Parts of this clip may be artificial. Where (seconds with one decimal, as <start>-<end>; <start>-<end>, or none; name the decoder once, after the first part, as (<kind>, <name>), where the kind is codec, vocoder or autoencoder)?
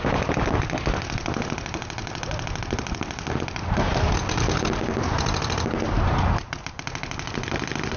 none